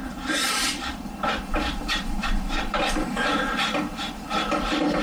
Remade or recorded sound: remade